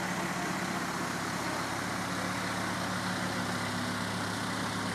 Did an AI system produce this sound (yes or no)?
no